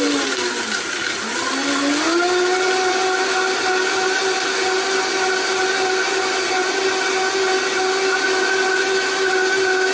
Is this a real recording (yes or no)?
yes